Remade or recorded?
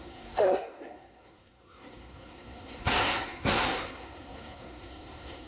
remade